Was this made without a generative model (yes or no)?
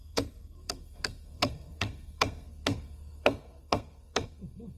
no